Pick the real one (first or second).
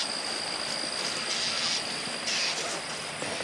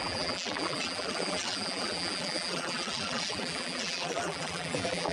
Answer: first